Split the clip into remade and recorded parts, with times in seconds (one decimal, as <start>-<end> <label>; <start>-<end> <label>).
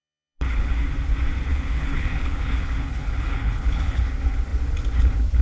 0.0-0.7 remade; 0.7-1.5 recorded; 1.5-4.1 remade; 4.1-5.4 recorded